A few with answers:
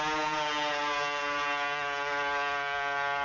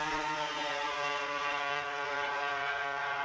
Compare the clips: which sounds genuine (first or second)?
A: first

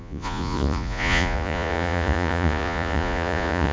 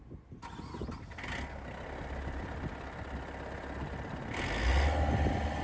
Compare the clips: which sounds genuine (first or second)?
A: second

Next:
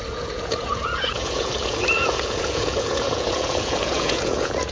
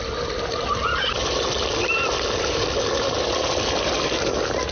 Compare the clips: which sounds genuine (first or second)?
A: second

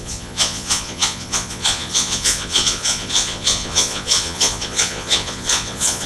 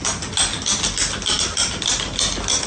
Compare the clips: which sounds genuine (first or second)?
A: second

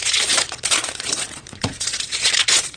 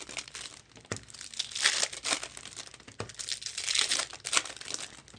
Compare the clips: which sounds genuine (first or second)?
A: second